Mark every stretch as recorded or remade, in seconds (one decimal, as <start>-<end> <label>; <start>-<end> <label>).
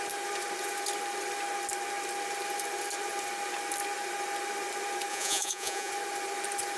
0.0-5.1 recorded; 5.1-5.9 remade; 5.9-6.8 recorded